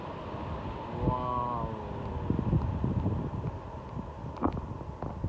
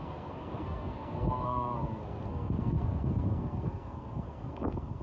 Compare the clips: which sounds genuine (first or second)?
first